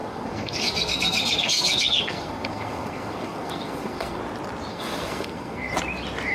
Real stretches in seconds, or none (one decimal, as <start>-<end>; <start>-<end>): 4.2-4.7; 5.7-6.3